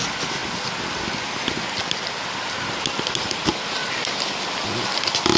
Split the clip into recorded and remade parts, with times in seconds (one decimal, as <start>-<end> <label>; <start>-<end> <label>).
0.0-5.4 recorded